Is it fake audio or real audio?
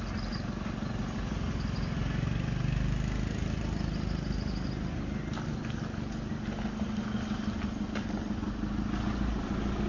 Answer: real